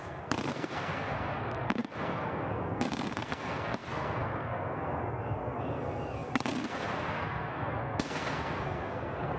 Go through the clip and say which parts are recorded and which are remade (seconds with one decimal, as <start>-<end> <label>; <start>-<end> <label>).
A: 0.0-9.4 remade